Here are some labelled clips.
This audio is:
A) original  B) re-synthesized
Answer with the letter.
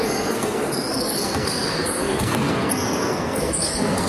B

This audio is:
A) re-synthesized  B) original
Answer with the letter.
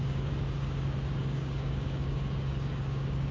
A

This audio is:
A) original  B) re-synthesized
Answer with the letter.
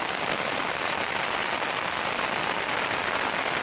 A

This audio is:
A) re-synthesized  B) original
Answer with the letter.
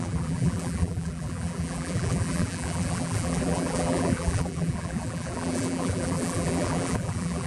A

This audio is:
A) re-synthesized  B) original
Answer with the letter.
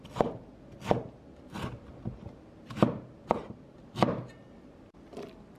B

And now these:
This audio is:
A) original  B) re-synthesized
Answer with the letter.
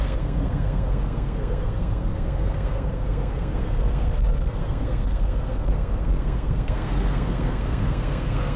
B